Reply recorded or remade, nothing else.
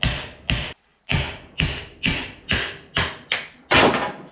recorded